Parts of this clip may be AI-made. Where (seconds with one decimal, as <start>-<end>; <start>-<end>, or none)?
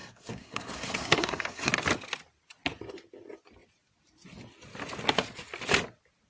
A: 0.0-1.7